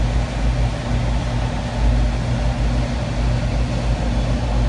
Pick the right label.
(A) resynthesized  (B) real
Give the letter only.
B